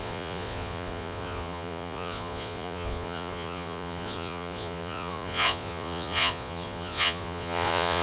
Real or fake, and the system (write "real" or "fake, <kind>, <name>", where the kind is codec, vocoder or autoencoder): fake, vocoder, Vocos